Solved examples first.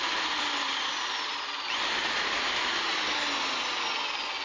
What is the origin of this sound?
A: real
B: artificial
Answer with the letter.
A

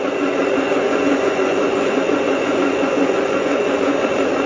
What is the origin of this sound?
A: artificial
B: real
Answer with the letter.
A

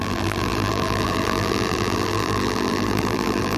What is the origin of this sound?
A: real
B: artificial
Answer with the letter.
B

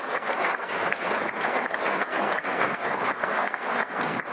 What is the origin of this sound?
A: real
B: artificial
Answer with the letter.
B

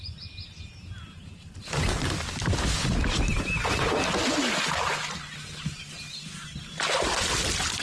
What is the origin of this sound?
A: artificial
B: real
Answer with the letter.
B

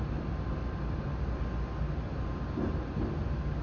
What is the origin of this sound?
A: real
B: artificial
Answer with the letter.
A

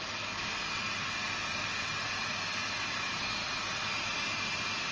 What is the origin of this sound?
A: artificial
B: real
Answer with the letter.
B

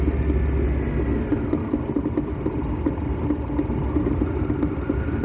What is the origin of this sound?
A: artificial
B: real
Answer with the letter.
B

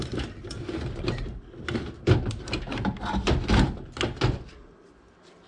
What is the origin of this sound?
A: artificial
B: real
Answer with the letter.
B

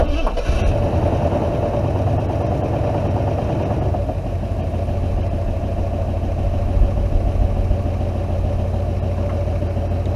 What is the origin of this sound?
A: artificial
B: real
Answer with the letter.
B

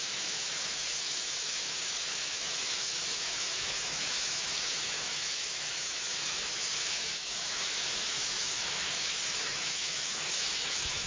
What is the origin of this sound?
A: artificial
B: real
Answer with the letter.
A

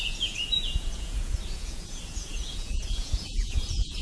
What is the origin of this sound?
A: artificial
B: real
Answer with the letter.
A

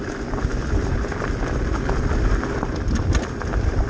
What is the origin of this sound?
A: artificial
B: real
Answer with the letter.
B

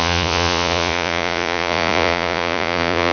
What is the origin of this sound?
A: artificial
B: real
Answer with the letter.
A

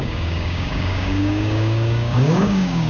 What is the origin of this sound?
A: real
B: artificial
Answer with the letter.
B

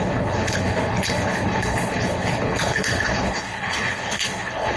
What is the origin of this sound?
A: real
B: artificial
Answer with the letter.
B